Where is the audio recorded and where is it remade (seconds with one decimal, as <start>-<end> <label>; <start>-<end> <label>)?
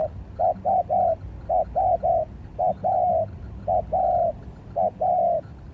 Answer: 0.0-5.7 recorded